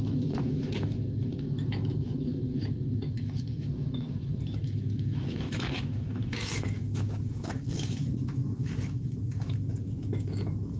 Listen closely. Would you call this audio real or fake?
fake